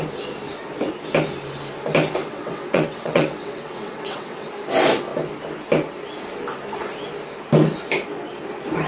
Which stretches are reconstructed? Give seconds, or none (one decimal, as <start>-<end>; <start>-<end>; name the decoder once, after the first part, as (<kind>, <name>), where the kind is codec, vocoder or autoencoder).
2.2-4.5 (vocoder, WaveNeXt)